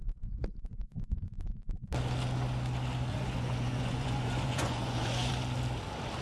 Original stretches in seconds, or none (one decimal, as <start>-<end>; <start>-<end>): 0.0-3.1; 5.3-6.2